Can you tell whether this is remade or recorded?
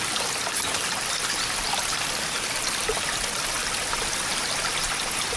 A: recorded